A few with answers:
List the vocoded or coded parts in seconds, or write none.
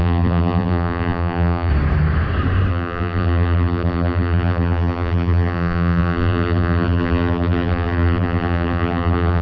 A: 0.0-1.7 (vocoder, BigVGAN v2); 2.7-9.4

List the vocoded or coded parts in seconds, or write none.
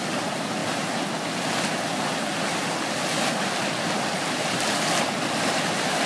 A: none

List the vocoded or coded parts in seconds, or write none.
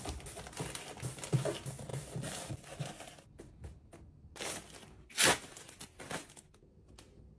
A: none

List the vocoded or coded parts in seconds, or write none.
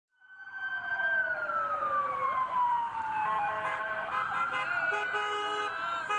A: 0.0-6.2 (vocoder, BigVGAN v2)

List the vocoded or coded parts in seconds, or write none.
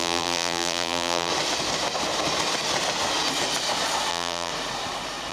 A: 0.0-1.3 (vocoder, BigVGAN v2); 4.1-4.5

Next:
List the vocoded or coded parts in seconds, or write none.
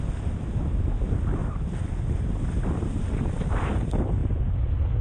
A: 0.0-1.4 (vocoder, BigVGAN v2); 2.0-5.0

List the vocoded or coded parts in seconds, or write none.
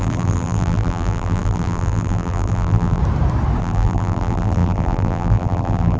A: 0.0-3.0 (vocoder, BigVGAN v2); 3.6-6.0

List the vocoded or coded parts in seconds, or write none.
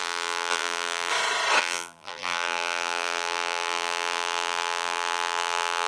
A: 0.0-1.1 (vocoder, BigVGAN v2); 1.6-5.9